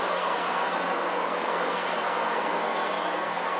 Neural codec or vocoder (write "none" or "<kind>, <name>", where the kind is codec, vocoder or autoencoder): codec, SNAC